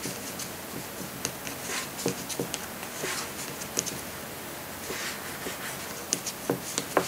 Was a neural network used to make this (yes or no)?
no